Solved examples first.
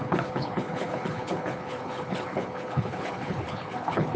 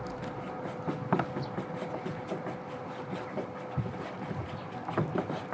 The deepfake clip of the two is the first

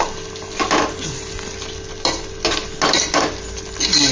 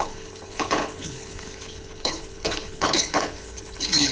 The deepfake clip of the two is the second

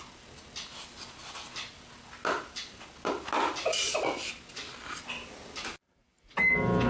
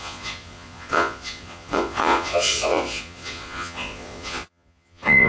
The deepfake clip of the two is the second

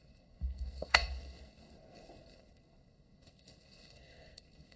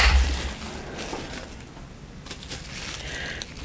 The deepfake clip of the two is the first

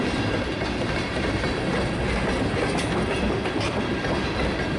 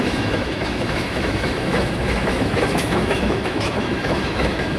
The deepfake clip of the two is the second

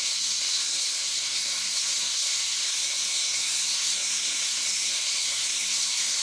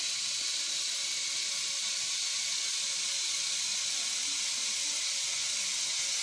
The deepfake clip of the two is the first